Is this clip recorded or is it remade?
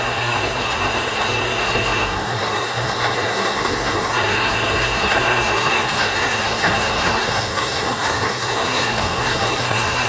remade